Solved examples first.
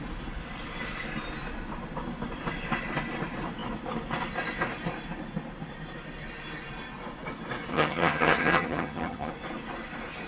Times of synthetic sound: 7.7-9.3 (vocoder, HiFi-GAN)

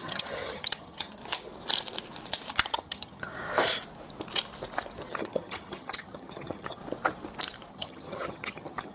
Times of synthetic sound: 0.0-1.2 (vocoder, HiFi-GAN); 2.5-3.3; 5.1-6.8; 7.7-8.9

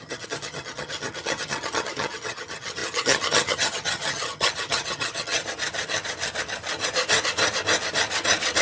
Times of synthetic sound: 0.0-5.4 (vocoder, HiFi-GAN)

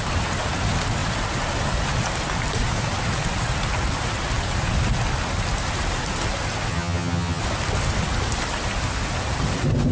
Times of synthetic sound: 6.7-7.4 (vocoder, HiFi-GAN)

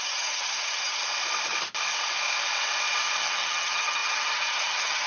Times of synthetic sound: 0.0-1.0 (vocoder, HiFi-GAN); 3.2-5.1